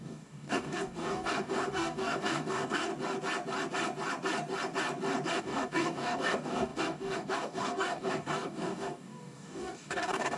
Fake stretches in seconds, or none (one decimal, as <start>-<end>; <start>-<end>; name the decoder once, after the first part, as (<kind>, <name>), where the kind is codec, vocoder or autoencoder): 0.0-2.9 (codec, DAC); 5.4-10.4